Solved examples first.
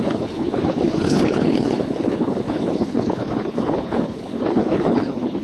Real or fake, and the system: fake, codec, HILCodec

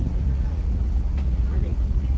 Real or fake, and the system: fake, vocoder, Vocos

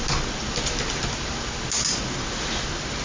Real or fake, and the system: real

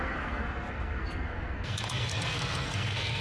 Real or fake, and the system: fake, codec, SNAC